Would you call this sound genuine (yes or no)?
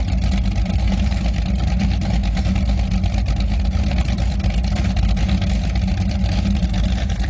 yes